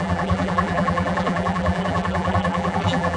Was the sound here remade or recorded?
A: remade